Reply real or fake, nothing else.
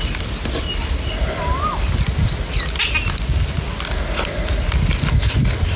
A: real